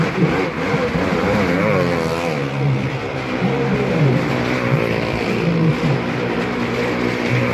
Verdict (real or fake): real